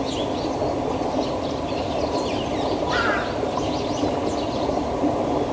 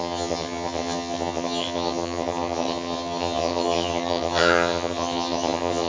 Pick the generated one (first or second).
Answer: second